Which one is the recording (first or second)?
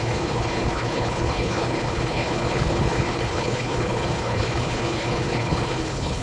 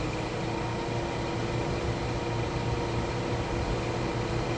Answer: second